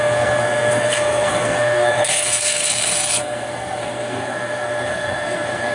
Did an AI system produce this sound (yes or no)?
yes